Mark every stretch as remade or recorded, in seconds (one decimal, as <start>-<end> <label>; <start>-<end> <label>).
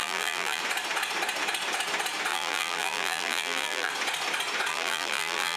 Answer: 0.0-0.6 remade; 0.6-2.3 recorded; 2.3-3.9 remade; 3.9-4.7 recorded; 4.7-5.6 remade